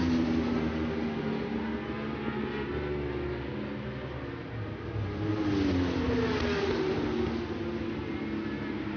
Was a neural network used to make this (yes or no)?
no